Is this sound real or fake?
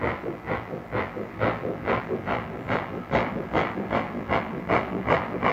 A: fake